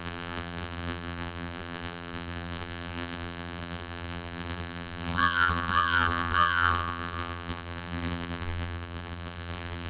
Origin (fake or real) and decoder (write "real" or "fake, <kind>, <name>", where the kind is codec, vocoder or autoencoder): fake, vocoder, BigVGAN v2